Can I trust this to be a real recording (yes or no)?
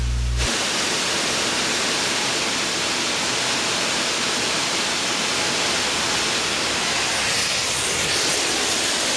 yes